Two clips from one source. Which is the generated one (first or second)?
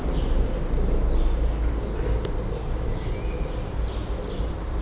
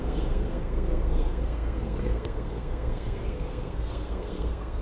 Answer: second